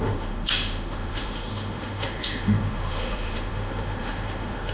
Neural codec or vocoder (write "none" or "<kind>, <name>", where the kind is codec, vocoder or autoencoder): autoencoder, DAC-VAE